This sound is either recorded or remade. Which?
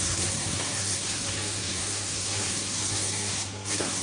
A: remade